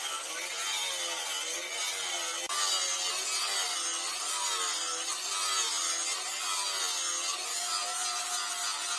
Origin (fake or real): real